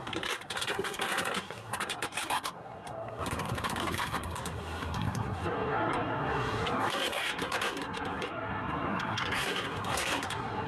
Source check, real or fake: fake